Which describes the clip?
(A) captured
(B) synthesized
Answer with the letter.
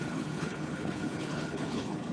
B